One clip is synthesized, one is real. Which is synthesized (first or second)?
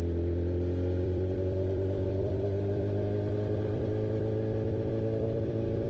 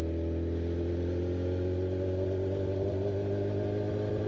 first